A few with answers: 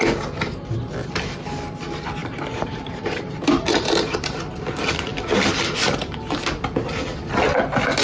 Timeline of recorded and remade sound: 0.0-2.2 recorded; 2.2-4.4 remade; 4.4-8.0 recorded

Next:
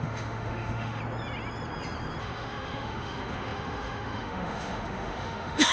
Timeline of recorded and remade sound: 0.0-1.0 remade; 1.0-2.2 recorded; 2.2-5.7 remade

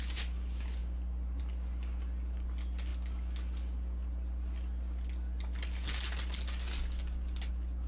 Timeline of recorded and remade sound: 0.0-7.9 recorded

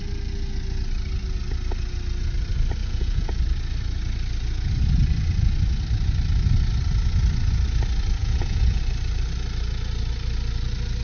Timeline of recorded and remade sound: 0.0-2.8 recorded; 2.8-3.4 remade; 3.4-8.2 recorded; 8.2-8.8 remade; 8.8-11.0 recorded

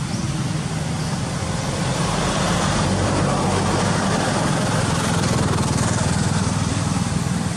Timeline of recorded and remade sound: 0.0-1.8 recorded; 1.8-3.2 remade; 3.2-7.6 recorded

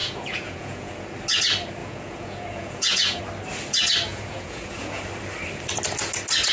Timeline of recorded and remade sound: 0.0-1.0 remade; 1.0-1.8 recorded; 1.8-3.2 remade; 3.2-4.1 recorded; 4.1-5.0 remade; 5.0-6.5 recorded

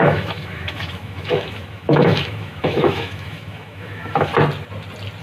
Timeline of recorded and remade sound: 0.0-4.3 remade; 4.3-5.2 recorded

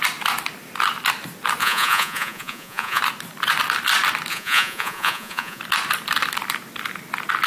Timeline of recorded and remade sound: 0.0-1.6 recorded; 1.6-3.0 remade; 3.0-4.3 recorded; 4.3-5.6 remade; 5.6-7.5 recorded